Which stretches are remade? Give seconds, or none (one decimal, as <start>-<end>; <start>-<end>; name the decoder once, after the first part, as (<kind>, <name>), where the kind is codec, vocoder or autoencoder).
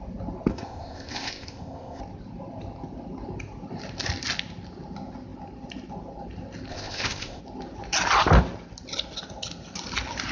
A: 0.5-2.0 (codec, ZipCodec); 6.7-7.4